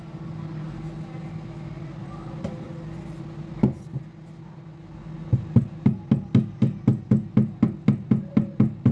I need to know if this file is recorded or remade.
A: recorded